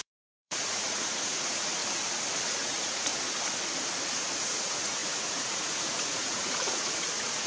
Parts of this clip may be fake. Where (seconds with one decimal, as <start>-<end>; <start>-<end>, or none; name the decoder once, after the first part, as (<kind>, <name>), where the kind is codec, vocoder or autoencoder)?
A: 0.0-1.8 (vocoder, Vocos); 2.5-3.1; 4.4-7.5